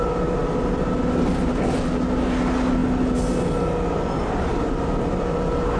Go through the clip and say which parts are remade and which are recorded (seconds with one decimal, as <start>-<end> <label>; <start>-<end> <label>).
0.0-5.8 recorded